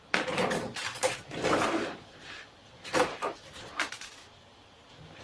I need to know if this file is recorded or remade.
remade